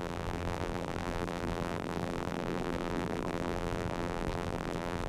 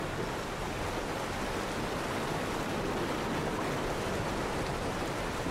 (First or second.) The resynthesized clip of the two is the first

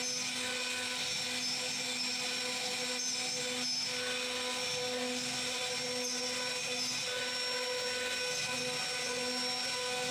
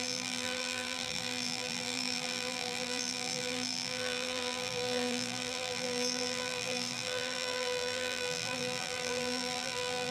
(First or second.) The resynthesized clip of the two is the second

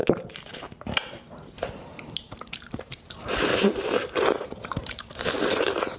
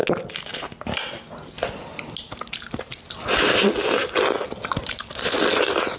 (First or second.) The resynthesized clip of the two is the first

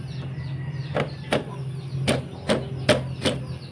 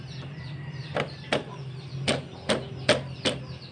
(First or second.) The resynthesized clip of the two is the second